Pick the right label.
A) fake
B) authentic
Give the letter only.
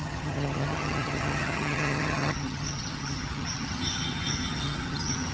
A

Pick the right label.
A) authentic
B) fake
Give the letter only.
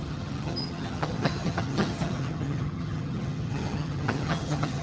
B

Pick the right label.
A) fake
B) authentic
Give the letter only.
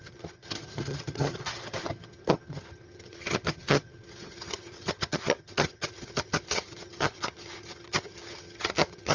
A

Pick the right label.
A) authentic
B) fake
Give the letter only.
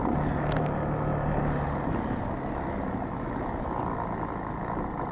A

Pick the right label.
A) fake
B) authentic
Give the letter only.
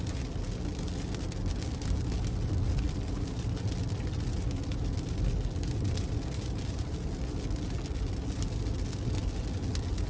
B